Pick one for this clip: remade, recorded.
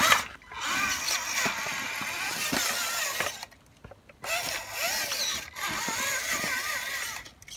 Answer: recorded